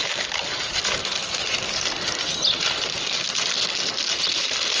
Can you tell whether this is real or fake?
real